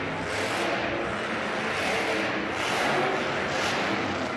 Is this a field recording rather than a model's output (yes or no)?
yes